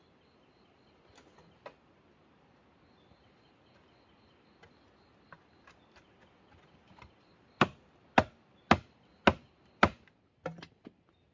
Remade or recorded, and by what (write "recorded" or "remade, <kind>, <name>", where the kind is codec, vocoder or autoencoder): recorded